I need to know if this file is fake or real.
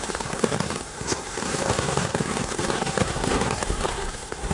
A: fake